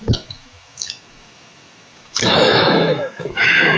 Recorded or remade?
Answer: remade